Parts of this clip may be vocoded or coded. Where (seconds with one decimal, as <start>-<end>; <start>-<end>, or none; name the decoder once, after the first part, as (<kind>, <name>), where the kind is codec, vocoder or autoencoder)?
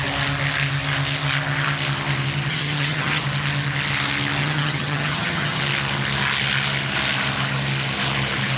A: 2.5-3.2 (vocoder, HiFi-GAN); 4.4-5.6